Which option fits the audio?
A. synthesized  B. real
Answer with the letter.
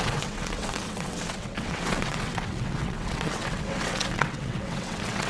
A